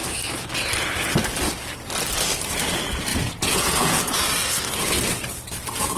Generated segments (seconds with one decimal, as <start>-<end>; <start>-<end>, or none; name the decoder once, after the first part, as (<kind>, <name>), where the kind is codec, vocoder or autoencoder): 3.1-4.2 (vocoder, Vocos)